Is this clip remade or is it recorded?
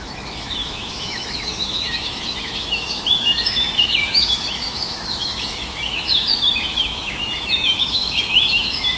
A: remade